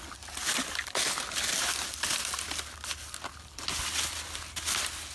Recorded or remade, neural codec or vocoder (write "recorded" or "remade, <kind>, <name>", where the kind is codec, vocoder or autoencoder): recorded